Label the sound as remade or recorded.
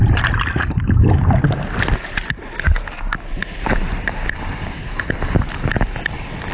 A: recorded